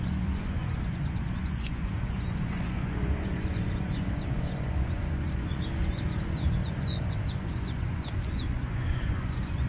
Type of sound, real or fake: fake